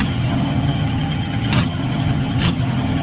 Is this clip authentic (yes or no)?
no